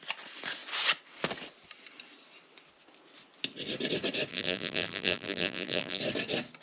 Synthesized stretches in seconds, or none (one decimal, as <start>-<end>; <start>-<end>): 4.3-6.0